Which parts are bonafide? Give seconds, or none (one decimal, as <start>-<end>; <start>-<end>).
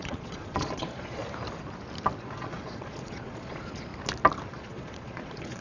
1.2-2.2; 3.9-4.5